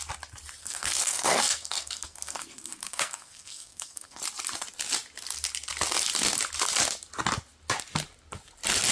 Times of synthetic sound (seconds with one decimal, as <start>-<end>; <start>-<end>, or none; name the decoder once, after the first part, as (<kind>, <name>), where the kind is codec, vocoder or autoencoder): 0.6-4.2 (codec, SNAC)